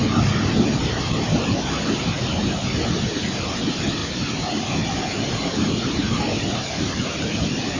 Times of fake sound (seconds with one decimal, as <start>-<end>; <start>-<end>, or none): none